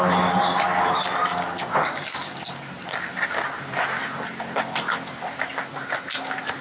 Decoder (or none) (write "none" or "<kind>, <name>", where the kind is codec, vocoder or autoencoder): none